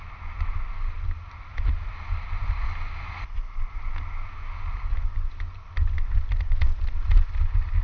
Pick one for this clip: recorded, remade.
recorded